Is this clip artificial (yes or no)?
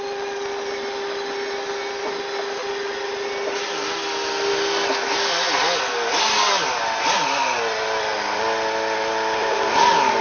no